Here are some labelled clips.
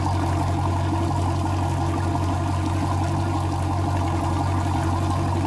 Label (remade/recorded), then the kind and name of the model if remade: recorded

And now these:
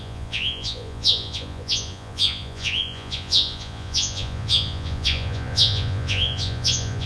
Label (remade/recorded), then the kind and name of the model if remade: remade, vocoder, Vocos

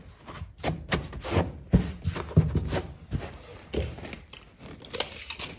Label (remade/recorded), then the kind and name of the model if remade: recorded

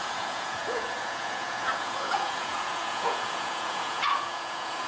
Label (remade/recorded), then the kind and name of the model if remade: remade, vocoder, Vocos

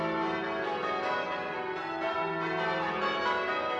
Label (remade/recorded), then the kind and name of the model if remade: recorded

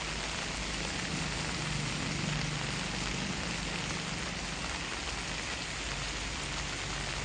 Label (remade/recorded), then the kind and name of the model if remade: recorded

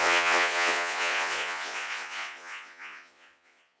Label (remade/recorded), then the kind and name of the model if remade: remade, vocoder, Vocos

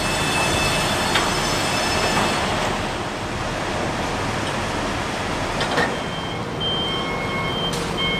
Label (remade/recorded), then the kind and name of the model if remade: recorded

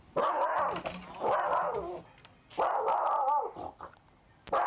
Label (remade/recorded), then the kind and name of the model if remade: recorded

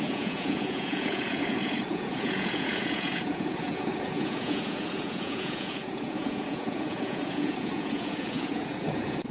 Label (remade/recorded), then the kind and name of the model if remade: remade, vocoder, Vocos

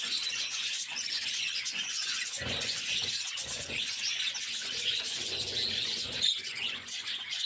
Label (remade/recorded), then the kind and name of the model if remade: remade, vocoder, Vocos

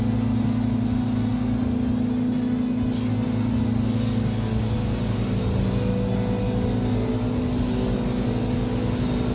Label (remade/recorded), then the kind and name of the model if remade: recorded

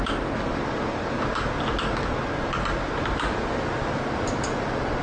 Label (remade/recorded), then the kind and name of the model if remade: recorded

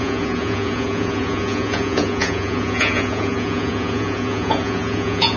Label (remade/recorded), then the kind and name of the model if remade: remade, vocoder, Vocos